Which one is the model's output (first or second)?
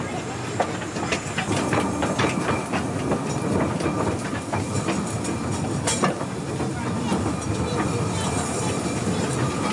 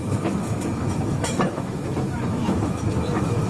second